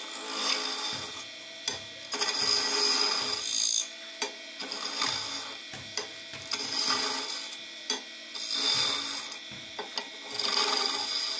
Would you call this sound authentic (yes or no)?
yes